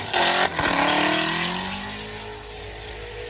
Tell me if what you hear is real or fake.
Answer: real